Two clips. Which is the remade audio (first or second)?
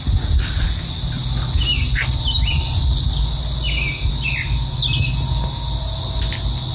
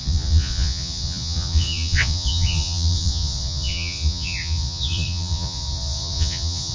second